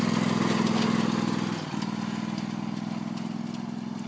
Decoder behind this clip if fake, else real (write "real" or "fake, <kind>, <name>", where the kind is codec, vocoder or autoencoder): real